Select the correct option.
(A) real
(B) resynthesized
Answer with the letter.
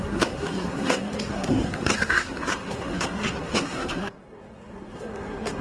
B